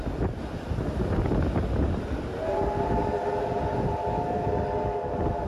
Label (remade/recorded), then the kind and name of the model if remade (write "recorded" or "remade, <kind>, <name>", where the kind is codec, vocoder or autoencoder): recorded